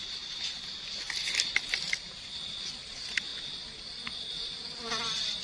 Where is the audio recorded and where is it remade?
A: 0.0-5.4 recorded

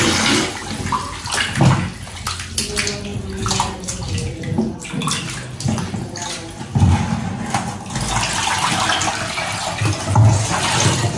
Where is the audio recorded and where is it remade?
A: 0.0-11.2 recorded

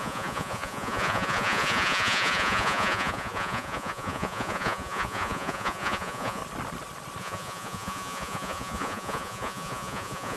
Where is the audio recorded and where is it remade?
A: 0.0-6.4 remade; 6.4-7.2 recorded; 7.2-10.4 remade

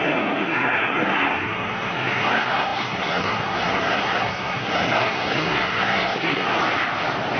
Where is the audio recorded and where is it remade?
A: 0.0-6.6 remade; 6.6-7.4 recorded

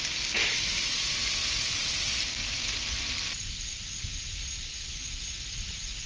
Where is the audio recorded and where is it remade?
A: 0.0-0.4 recorded; 0.4-4.1 remade; 4.1-4.7 recorded; 4.7-6.1 remade